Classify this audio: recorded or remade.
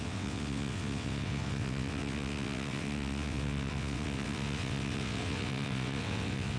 remade